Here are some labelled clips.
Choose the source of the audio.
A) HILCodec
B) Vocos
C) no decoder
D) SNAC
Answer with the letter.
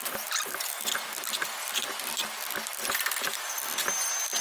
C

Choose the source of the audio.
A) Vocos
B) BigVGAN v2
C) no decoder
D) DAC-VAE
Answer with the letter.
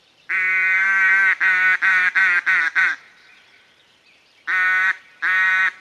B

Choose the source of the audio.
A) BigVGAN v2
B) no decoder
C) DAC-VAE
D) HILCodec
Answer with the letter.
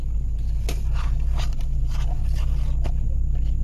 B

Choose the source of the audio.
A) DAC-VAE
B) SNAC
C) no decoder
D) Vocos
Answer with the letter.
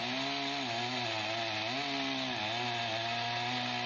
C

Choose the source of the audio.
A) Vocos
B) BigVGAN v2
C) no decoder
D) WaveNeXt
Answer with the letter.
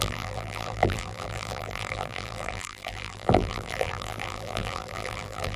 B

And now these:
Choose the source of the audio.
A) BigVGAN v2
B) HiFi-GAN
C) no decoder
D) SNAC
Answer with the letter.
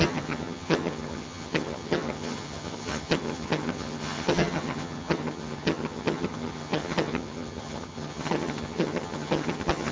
B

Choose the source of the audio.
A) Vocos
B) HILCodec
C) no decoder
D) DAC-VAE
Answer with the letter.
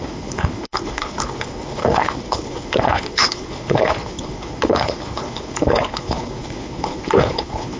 B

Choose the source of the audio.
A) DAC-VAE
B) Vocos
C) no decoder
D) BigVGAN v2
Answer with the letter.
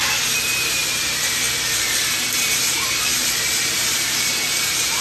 D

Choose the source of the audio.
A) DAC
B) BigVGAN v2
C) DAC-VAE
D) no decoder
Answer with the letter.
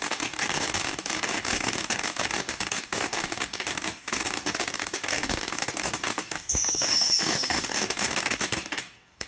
A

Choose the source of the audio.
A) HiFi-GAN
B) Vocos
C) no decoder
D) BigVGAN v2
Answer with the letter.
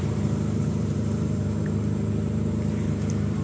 D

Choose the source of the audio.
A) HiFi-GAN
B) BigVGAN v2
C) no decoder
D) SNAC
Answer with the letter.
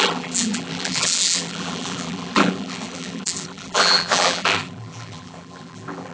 B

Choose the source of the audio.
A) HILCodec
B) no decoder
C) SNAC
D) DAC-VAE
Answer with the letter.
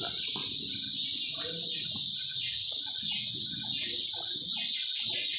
B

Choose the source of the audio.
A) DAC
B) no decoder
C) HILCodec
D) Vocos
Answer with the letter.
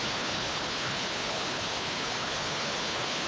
C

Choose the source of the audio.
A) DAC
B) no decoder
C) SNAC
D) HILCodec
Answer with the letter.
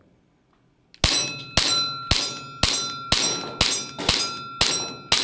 B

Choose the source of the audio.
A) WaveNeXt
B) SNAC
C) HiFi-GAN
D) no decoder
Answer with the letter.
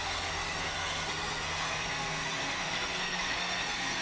B